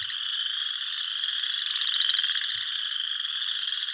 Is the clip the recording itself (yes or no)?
yes